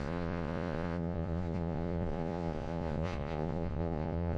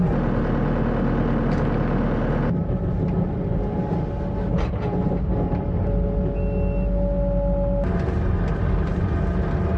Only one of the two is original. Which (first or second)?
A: second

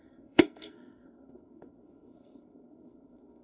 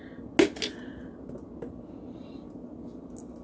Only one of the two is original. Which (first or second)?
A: second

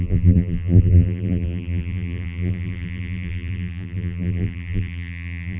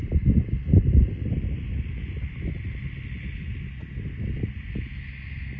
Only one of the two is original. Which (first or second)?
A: second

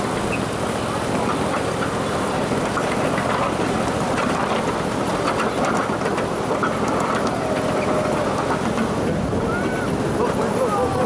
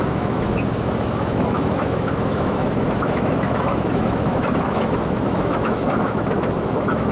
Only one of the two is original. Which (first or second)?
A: first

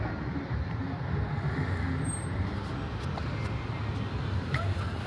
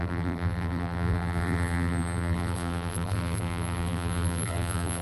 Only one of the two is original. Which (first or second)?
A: first